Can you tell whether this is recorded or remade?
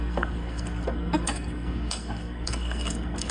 remade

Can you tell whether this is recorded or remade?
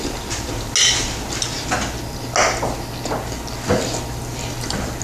recorded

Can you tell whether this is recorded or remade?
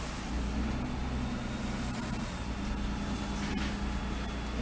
recorded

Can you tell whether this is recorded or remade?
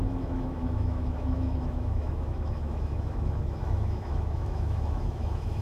remade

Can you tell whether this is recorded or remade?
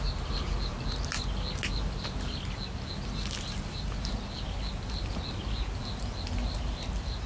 recorded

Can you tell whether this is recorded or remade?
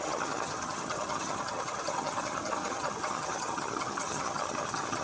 remade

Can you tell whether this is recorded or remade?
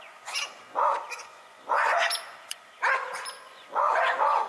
remade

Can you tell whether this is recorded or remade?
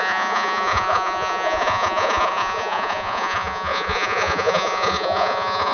remade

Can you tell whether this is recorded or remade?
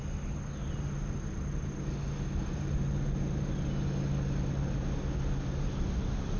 recorded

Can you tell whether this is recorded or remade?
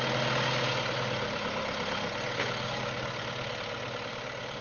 recorded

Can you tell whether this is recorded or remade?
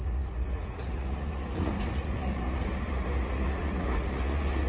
remade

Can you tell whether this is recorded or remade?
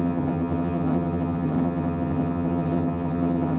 remade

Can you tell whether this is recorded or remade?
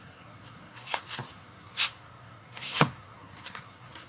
remade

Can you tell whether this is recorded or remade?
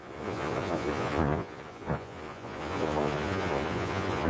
remade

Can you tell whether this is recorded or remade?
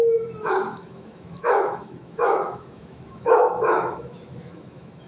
remade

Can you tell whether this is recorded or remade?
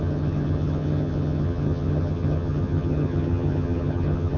remade